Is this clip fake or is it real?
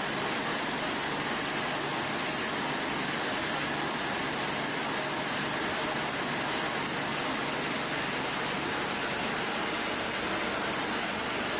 real